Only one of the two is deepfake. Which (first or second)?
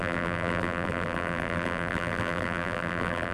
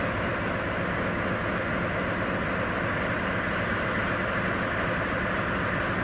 first